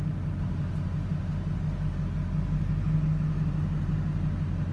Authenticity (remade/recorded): recorded